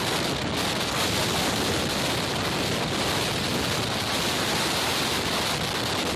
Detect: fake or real real